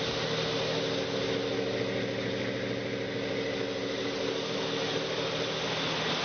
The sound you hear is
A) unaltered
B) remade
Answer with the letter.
A